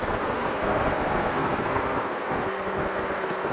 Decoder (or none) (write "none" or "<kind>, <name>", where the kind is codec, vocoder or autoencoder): codec, SNAC